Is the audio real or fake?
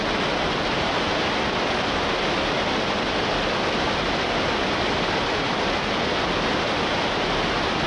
real